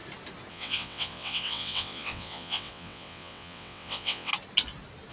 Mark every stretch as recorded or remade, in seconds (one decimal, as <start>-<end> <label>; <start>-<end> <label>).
0.0-0.5 recorded; 0.5-4.3 remade; 4.3-5.1 recorded

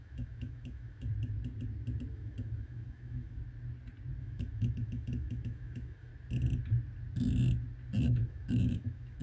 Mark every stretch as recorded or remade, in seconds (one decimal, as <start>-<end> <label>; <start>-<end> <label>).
0.0-1.1 remade; 1.1-2.1 recorded; 2.1-3.4 remade; 3.4-4.2 recorded; 4.2-6.1 remade; 6.1-8.0 recorded; 8.0-9.2 remade